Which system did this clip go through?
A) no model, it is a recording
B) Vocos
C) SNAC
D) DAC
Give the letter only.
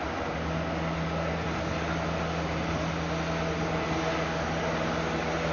A